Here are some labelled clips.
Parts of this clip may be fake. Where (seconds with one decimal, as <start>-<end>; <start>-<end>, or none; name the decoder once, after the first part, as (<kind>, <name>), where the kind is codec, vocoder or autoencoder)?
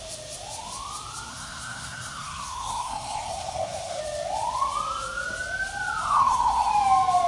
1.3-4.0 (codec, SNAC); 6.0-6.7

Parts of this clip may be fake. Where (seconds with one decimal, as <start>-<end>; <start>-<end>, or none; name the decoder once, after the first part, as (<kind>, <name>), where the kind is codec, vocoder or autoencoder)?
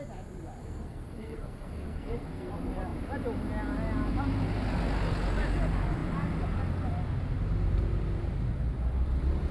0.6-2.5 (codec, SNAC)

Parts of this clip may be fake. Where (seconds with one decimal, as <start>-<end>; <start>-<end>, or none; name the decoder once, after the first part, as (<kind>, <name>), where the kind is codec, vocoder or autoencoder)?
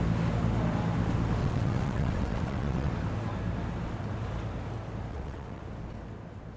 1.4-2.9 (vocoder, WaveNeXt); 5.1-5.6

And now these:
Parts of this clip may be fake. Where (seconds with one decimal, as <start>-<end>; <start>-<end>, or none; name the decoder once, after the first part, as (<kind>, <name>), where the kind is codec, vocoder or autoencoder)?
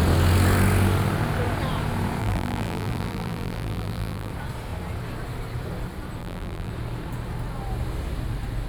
2.2-4.3 (vocoder, BigVGAN v2); 6.2-6.7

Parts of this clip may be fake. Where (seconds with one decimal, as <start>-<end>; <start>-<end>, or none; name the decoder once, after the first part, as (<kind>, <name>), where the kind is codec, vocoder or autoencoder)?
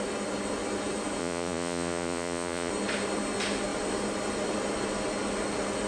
1.2-2.7 (vocoder, Vocos)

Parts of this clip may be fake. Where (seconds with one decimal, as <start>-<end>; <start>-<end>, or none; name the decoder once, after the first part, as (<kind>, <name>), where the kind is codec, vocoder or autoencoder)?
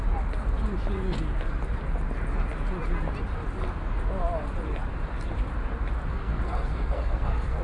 6.1-7.6 (codec, SNAC)